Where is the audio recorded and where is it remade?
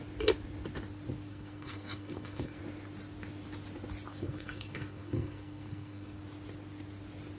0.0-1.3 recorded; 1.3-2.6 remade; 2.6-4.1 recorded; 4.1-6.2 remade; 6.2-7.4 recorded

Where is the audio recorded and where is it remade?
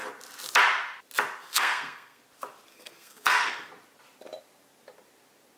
0.0-1.4 recorded; 1.4-2.2 remade; 2.2-2.7 recorded; 2.7-3.7 remade; 3.7-5.6 recorded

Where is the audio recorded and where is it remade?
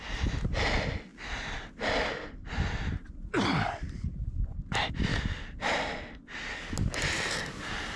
0.0-8.0 recorded